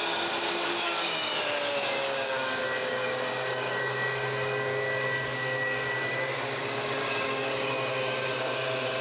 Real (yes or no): no